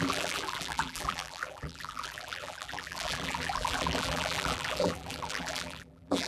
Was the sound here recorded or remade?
remade